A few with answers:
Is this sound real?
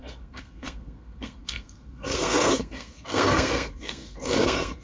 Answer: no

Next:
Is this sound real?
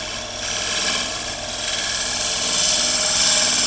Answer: yes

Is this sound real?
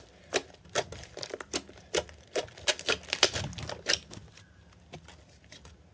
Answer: yes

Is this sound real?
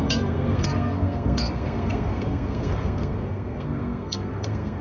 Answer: no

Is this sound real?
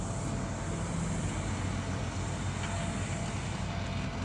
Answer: yes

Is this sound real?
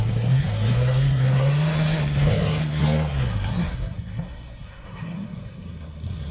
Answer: no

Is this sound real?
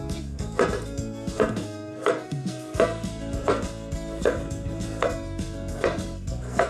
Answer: no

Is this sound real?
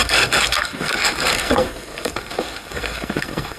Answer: no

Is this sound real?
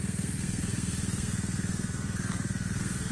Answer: no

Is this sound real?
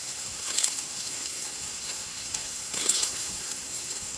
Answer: no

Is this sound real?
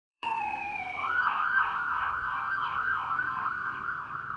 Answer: no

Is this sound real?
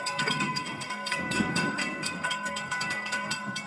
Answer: no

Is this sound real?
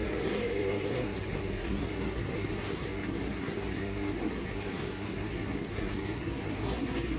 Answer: no